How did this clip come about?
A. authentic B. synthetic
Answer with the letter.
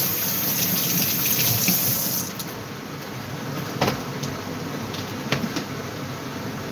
A